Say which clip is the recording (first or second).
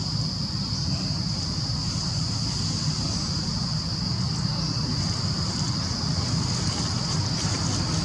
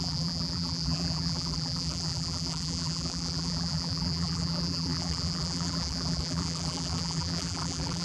first